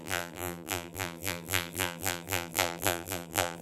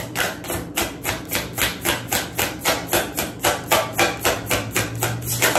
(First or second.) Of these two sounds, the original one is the second